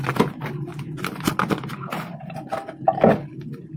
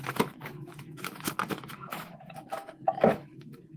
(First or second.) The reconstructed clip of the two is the second